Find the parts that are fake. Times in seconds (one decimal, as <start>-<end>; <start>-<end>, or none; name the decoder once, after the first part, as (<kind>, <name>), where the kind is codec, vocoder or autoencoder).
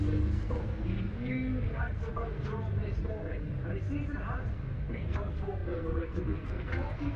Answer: 0.0-2.5 (codec, SNAC); 3.0-3.5; 4.4-7.2